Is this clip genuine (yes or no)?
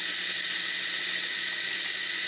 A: yes